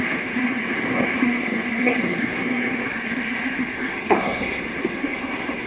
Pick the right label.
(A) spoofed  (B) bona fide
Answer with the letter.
A